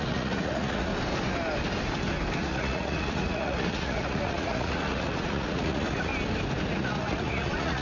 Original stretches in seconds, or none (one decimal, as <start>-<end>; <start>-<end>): 0.9-2.4; 6.1-6.8